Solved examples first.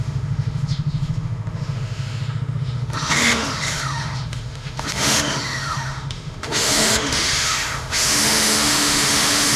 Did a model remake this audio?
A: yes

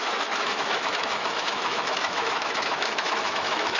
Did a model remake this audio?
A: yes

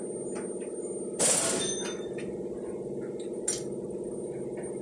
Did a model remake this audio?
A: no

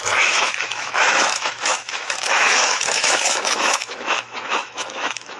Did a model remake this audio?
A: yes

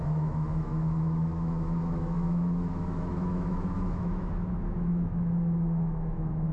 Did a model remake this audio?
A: yes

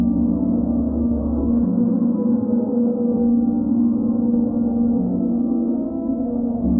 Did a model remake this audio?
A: yes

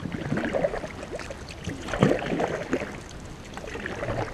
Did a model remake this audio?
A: no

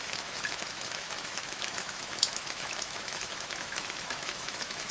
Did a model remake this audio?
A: yes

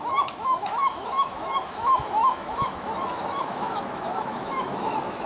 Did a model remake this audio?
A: yes